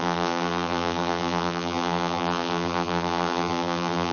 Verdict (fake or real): fake